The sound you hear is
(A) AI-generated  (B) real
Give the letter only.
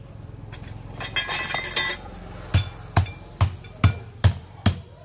B